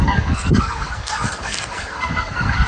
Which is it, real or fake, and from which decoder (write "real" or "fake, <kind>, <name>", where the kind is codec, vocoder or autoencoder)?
fake, codec, SNAC